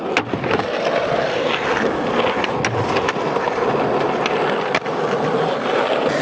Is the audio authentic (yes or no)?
yes